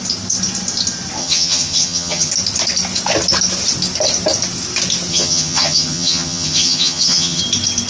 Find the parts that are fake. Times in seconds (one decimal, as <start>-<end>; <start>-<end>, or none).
1.2-2.3; 5.1-7.4